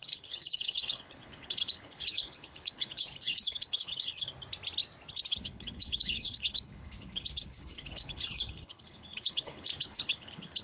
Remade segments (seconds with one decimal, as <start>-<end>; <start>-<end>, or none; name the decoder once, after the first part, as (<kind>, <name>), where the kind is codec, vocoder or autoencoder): 0.0-4.3 (codec, HILCodec); 5.1-10.6